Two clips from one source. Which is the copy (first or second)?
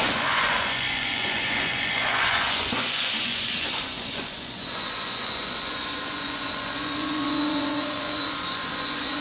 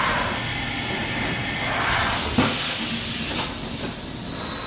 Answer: first